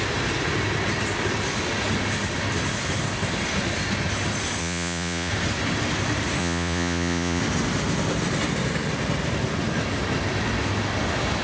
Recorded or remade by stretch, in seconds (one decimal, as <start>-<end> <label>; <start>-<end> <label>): 0.0-4.6 recorded; 4.6-5.3 remade; 5.3-6.4 recorded; 6.4-7.4 remade; 7.4-11.4 recorded